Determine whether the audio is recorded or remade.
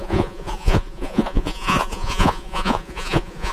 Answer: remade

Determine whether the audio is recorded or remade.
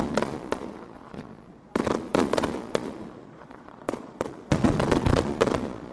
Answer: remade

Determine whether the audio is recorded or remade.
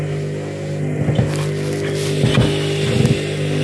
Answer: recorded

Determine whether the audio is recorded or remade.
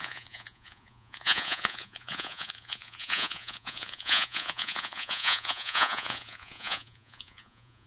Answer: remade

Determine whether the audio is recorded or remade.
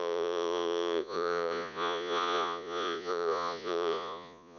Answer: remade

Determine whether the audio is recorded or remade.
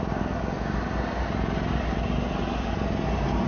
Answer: recorded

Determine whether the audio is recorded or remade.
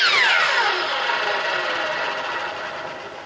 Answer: recorded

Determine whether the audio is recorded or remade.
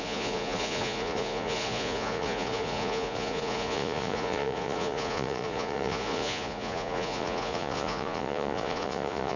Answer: remade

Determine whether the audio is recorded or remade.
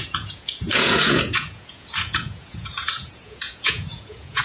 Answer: remade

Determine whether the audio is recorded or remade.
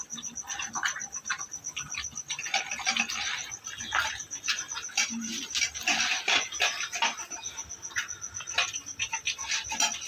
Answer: recorded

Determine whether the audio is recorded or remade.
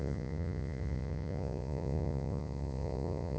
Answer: remade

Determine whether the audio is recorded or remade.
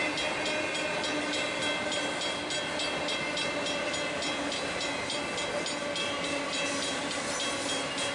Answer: recorded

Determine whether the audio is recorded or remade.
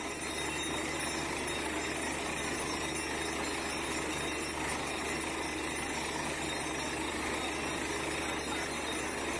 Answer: recorded